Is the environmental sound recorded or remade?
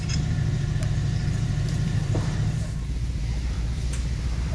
remade